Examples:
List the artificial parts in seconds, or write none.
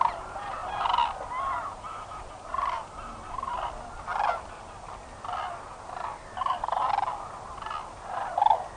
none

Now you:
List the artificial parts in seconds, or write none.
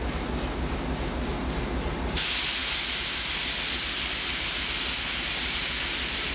none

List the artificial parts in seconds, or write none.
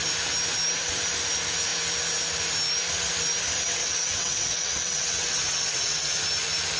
3.8-6.2 (vocoder, WaveNeXt)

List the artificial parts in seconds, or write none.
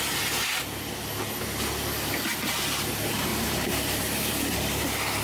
3.3-4.0 (vocoder, BigVGAN v2)